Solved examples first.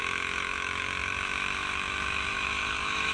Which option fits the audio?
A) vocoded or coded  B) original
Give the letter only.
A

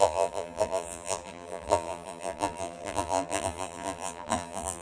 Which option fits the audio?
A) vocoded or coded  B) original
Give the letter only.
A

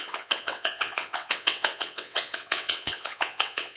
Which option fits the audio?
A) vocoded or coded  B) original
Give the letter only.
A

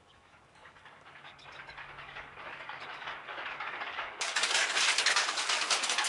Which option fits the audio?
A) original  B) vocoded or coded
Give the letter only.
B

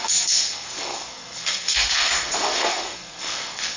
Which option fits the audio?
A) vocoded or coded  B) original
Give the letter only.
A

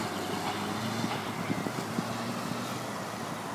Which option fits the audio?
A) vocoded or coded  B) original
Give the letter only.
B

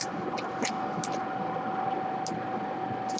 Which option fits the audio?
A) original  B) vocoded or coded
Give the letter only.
A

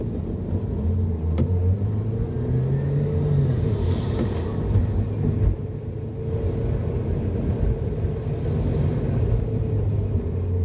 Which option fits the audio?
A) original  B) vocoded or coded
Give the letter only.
A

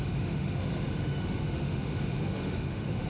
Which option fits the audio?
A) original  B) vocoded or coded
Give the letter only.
B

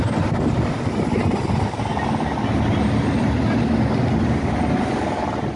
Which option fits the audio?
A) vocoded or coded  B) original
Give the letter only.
B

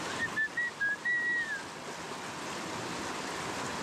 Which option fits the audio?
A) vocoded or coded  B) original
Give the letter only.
B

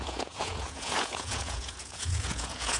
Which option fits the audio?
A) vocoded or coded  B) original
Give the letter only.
A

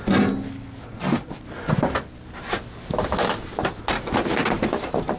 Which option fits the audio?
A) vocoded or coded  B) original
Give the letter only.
B